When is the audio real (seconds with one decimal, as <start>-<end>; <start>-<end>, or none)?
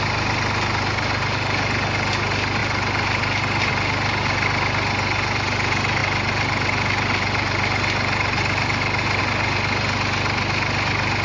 0.0-11.2